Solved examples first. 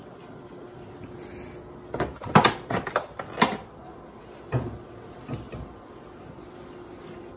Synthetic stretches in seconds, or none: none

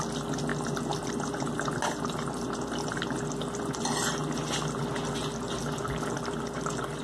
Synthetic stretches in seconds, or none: none

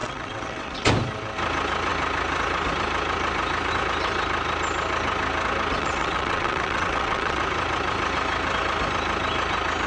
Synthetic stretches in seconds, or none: 0.0-0.9 (vocoder, WaveNeXt); 5.8-7.4

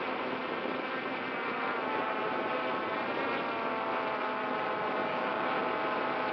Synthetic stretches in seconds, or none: 5.0-5.6 (codec, DAC)